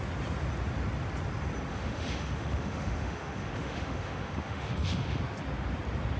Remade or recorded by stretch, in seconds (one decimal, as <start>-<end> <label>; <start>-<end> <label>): 0.0-1.7 recorded; 1.7-5.2 remade; 5.2-6.2 recorded